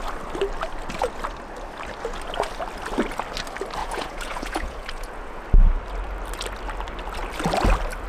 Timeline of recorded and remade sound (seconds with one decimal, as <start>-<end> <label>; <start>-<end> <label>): 0.0-3.8 recorded; 3.8-5.4 remade; 5.4-8.1 recorded